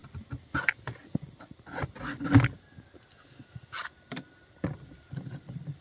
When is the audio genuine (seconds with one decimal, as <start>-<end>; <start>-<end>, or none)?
0.0-5.8